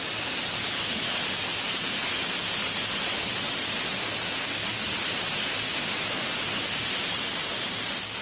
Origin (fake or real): real